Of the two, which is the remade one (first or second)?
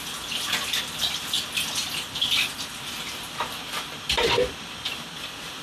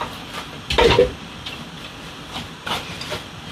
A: second